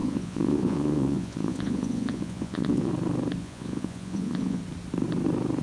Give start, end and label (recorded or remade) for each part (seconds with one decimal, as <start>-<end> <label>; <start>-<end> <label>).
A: 0.0-2.9 remade; 2.9-3.4 recorded; 3.4-4.6 remade; 4.6-5.6 recorded